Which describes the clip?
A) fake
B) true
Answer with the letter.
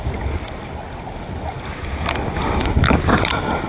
B